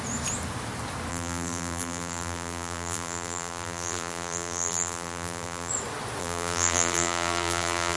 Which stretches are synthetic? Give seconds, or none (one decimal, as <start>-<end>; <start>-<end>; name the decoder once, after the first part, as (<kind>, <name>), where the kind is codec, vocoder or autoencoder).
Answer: 1.1-5.7 (vocoder, BigVGAN v2); 6.2-8.0